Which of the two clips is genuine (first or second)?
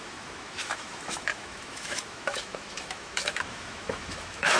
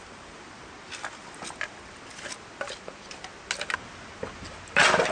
second